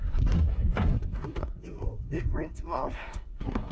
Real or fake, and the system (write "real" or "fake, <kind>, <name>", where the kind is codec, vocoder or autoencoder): fake, codec, SNAC